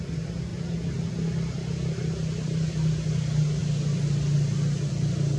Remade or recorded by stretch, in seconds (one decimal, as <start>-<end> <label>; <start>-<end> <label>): 0.0-5.4 recorded